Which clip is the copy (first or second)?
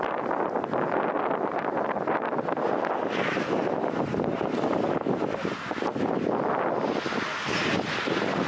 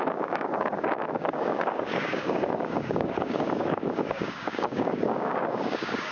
second